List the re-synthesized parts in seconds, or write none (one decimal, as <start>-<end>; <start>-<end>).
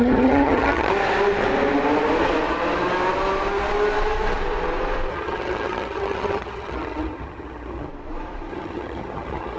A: 0.0-0.9; 5.1-7.9; 8.5-9.6